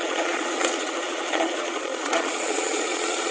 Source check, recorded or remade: remade